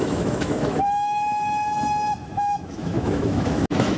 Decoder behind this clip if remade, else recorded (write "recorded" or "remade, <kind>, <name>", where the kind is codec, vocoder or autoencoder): remade, autoencoder, DAC-VAE